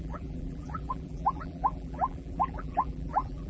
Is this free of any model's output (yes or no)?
no